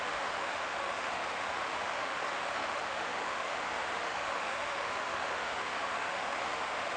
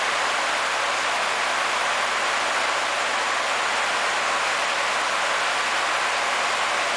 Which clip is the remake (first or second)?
first